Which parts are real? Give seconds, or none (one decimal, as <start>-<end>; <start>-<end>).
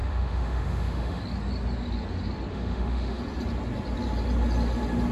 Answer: 1.2-2.5; 3.2-5.1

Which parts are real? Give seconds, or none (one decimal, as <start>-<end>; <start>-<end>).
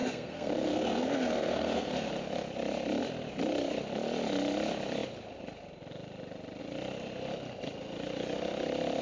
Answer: 2.1-9.0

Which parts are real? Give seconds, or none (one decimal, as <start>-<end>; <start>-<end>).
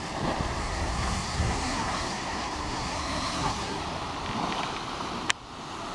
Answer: 0.0-0.6; 3.8-5.9